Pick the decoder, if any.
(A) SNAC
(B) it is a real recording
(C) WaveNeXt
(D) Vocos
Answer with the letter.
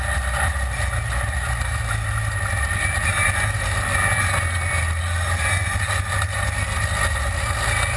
B